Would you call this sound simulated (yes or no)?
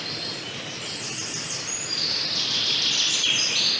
yes